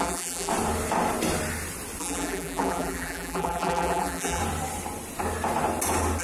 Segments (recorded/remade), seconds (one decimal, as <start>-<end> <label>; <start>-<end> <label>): 0.0-0.5 remade; 0.5-2.0 recorded; 2.0-4.4 remade; 4.4-6.2 recorded